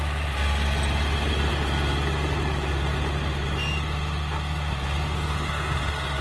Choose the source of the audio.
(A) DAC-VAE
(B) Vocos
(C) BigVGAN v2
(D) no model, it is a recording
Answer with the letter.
D